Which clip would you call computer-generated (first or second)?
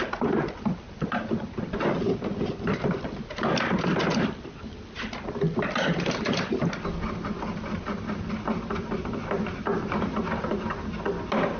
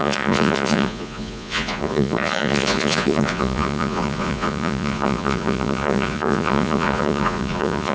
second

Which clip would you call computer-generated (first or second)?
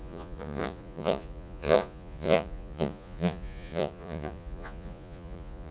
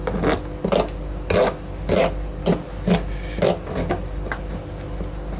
first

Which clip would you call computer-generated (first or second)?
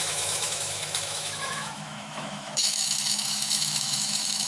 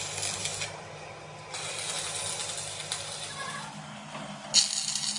first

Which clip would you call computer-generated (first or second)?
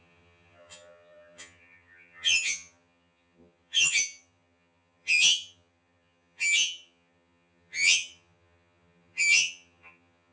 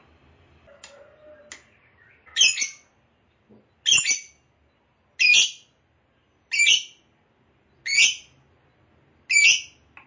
first